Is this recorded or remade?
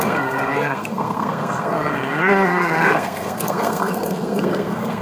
remade